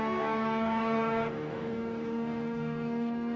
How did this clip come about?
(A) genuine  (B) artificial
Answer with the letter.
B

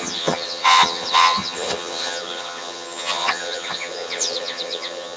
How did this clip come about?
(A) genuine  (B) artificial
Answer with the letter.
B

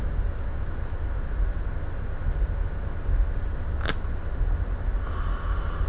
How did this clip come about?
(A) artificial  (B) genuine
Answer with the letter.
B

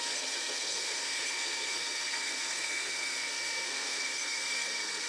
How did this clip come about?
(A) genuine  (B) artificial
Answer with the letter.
B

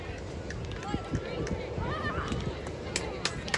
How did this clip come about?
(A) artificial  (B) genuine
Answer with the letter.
B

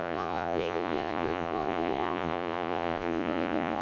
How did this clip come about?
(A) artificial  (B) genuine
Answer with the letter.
A